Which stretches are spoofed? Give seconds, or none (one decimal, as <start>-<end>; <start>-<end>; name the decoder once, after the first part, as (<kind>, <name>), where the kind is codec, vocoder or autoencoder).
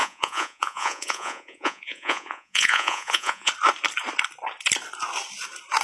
0.0-3.5 (vocoder, Vocos)